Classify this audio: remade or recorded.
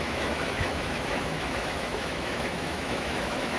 remade